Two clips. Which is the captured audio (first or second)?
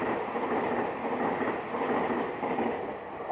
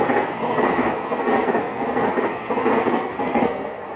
first